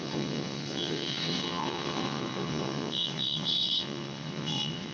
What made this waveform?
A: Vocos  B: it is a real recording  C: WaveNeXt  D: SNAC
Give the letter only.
C